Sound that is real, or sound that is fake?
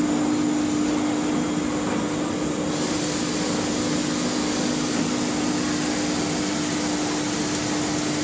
real